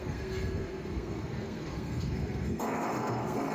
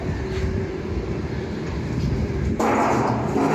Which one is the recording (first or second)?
second